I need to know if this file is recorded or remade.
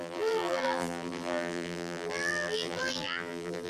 remade